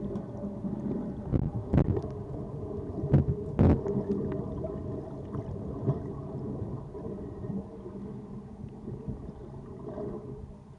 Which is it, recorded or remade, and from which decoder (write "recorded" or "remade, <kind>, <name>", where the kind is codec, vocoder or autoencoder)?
recorded